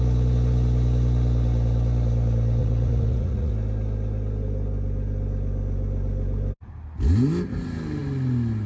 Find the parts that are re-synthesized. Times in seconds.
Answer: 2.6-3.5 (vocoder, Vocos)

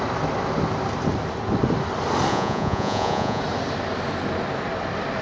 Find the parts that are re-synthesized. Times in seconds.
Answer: 2.3-3.4 (vocoder, Vocos)

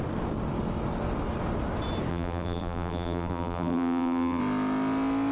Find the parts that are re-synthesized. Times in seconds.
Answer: 2.1-4.4 (vocoder, BigVGAN v2)